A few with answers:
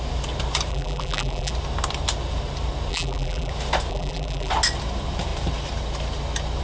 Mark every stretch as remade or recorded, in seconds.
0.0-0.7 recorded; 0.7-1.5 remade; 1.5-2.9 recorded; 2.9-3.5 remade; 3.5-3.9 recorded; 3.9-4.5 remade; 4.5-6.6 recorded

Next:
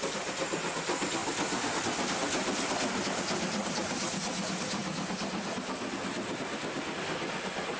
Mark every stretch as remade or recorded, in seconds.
0.0-7.8 recorded

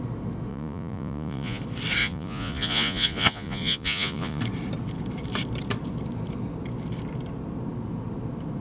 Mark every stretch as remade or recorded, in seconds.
0.0-0.5 recorded; 0.5-1.6 remade; 1.6-2.0 recorded; 2.0-4.4 remade; 4.4-8.6 recorded

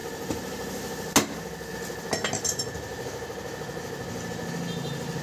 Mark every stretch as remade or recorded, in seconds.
0.0-5.2 recorded

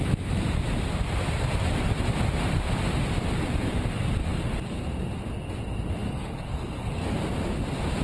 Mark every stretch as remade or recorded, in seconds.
0.0-6.0 recorded; 6.0-7.2 remade; 7.2-8.0 recorded